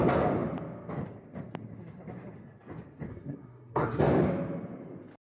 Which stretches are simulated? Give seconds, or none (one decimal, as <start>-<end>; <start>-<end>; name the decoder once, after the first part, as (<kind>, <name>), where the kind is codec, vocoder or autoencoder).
3.1-4.0 (codec, SNAC)